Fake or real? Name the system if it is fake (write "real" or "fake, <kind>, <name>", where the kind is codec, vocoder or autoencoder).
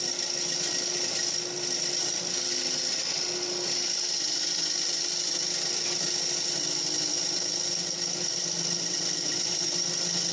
real